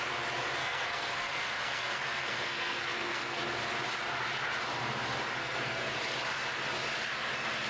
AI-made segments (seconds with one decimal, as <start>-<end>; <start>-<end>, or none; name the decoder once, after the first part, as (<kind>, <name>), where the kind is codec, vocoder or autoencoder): 0.6-3.4 (codec, SNAC); 5.4-5.9